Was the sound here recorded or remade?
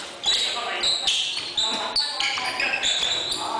recorded